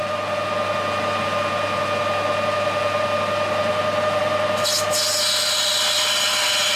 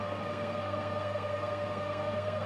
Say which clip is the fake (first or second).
second